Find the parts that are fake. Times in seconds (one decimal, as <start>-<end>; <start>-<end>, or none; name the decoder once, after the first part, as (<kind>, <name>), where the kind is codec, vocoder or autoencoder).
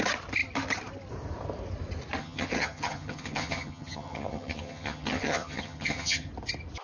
2.2-6.3 (vocoder, HiFi-GAN)